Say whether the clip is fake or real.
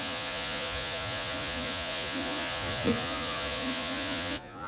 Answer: fake